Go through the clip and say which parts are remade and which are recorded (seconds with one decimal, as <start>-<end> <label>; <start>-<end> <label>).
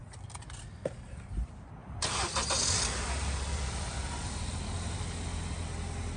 0.0-1.8 recorded; 1.8-4.0 remade; 4.0-6.2 recorded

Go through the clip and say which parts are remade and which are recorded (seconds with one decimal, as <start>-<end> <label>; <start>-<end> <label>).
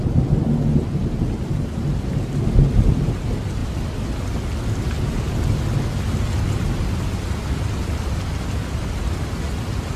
0.0-10.0 recorded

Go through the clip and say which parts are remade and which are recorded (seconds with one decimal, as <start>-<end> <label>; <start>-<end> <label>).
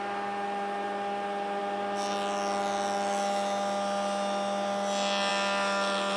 0.0-6.2 recorded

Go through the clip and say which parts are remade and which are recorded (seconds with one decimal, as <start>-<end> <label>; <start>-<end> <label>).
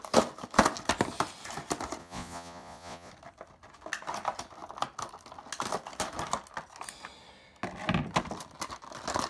0.0-2.0 recorded; 2.0-3.1 remade; 3.1-9.3 recorded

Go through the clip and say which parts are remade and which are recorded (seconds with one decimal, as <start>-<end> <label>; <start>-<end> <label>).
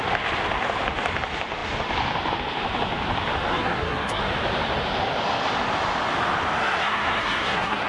0.0-3.5 recorded; 3.5-4.2 remade; 4.2-6.6 recorded; 6.6-7.9 remade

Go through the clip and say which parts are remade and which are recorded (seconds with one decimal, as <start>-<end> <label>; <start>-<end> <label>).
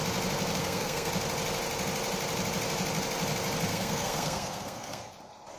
0.0-0.6 recorded; 0.6-1.1 remade; 1.1-3.7 recorded; 3.7-5.1 remade; 5.1-5.6 recorded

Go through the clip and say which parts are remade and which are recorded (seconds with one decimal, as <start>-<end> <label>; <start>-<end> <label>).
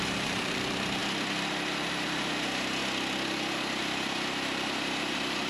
0.0-1.0 remade; 1.0-1.9 recorded; 1.9-2.8 remade; 2.8-3.8 recorded; 3.8-5.5 remade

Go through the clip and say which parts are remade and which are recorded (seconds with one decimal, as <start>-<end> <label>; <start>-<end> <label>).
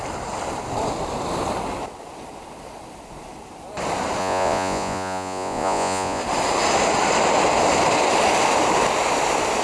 0.0-4.2 recorded; 4.2-6.2 remade; 6.2-9.6 recorded